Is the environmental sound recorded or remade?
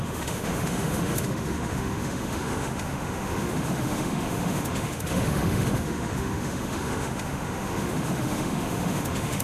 remade